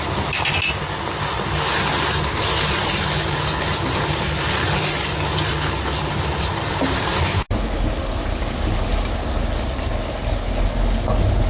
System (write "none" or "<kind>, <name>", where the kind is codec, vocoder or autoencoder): none